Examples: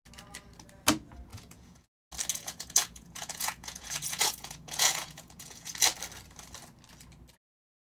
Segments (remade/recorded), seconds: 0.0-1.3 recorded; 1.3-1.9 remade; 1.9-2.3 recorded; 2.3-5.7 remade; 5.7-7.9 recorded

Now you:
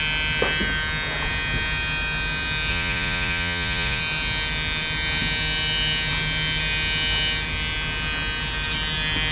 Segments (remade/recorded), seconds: 0.0-2.7 recorded; 2.7-4.0 remade; 4.0-9.3 recorded

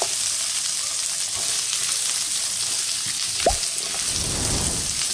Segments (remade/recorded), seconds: 0.0-5.1 recorded

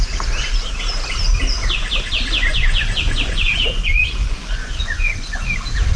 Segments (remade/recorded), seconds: 0.0-2.5 recorded; 2.5-5.5 remade; 5.5-6.0 recorded